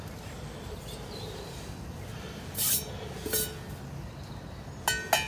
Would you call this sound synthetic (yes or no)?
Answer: no